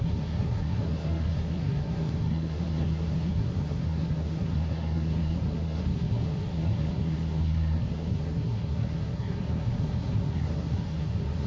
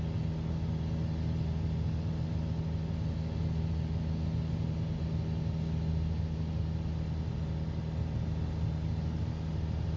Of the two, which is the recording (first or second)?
second